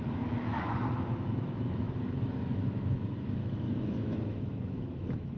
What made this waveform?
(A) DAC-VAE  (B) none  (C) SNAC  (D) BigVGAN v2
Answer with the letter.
A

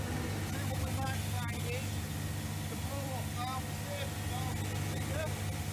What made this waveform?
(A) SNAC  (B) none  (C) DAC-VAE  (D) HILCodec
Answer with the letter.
B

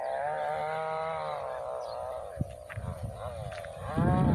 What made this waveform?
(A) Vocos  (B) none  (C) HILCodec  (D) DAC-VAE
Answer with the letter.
B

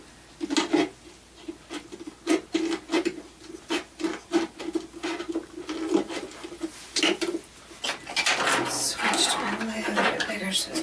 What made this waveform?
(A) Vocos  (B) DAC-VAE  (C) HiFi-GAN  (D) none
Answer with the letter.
D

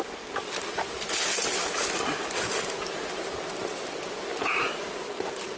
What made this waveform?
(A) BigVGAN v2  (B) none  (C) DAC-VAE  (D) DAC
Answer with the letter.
B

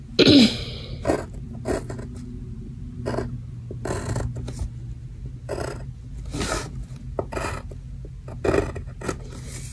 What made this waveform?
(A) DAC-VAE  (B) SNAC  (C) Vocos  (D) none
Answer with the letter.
D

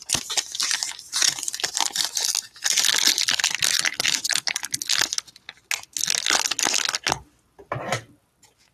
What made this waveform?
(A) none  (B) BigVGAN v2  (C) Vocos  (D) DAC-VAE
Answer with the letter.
A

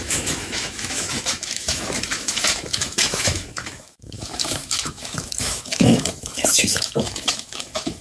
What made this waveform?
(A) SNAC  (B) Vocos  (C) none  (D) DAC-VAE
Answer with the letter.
D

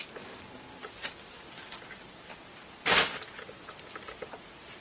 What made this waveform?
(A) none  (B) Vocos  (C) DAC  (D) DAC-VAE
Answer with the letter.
A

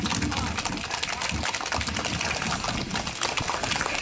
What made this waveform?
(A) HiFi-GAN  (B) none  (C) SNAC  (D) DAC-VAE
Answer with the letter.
B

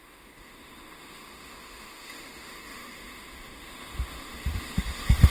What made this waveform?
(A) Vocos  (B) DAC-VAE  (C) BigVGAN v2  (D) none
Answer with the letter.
B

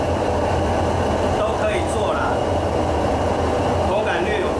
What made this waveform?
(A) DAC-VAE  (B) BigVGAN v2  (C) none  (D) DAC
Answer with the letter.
C